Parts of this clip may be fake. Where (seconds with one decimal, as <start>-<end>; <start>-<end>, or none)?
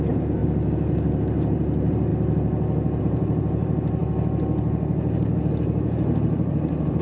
0.0-0.4; 1.2-2.1; 3.0-4.0; 5.6-7.0